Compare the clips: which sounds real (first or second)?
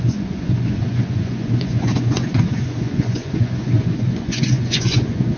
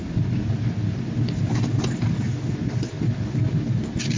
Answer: second